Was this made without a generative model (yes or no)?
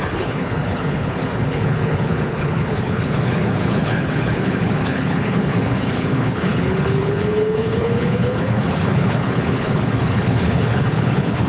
no